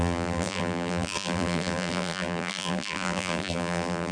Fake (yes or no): yes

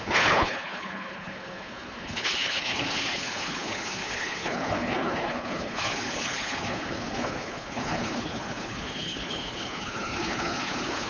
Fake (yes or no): yes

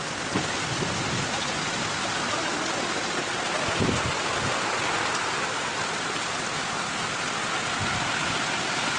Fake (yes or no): no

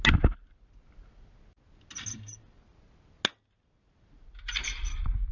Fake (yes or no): no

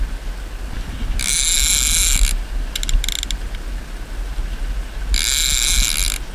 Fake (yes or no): no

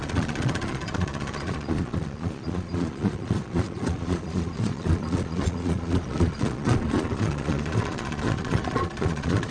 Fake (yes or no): yes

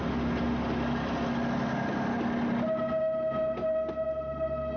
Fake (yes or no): no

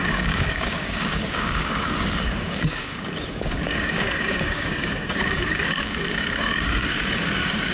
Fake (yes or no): yes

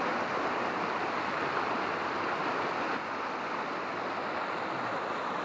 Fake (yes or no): no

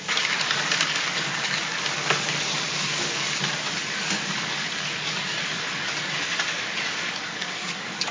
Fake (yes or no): yes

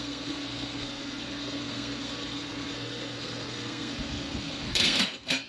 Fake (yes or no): yes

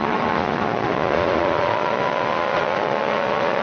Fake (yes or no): yes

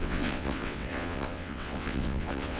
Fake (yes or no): yes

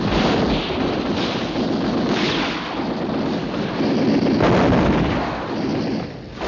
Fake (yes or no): no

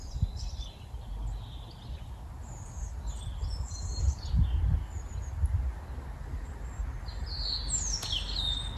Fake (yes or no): no